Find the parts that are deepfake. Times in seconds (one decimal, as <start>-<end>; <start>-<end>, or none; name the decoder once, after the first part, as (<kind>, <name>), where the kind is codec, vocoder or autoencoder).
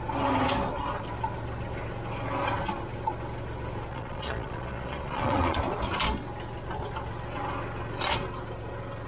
3.9-5.6 (vocoder, Vocos)